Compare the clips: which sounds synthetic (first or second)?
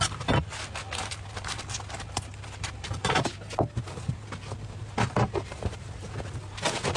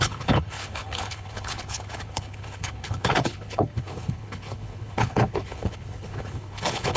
second